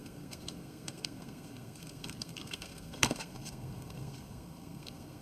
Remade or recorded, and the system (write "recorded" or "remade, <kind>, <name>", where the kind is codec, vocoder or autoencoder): remade, codec, SNAC